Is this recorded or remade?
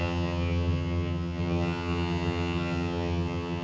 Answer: remade